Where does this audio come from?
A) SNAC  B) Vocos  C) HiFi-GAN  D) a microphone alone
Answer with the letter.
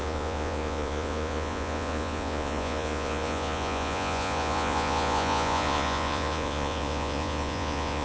B